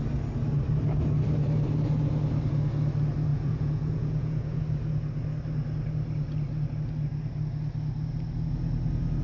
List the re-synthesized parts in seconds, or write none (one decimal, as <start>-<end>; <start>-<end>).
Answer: 3.3-4.6